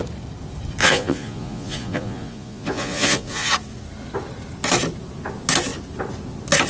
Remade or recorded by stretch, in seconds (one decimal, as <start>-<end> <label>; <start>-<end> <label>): 0.0-0.8 recorded; 0.8-3.5 remade; 3.5-6.7 recorded